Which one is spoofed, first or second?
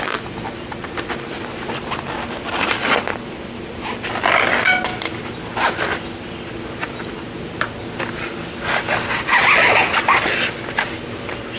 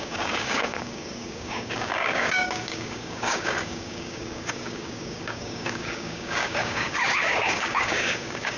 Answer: second